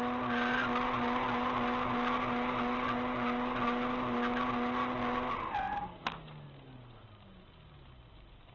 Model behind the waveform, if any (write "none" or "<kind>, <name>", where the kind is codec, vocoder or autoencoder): none